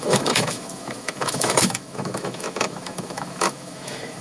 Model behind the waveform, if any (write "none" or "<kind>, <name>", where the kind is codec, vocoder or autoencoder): autoencoder, DAC-VAE